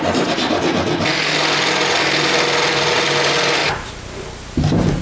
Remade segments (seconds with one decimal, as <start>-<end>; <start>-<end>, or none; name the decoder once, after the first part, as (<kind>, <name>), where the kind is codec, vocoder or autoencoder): none